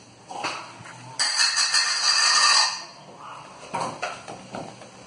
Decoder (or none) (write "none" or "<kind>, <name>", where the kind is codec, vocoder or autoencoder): none